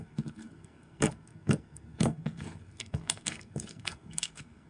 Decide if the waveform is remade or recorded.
remade